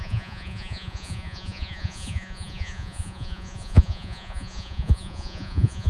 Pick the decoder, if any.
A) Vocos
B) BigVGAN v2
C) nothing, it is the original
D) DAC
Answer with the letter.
A